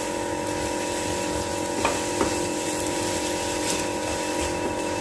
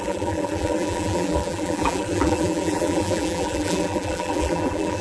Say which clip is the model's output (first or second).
second